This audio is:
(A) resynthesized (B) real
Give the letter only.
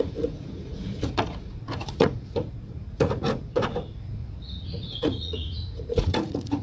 A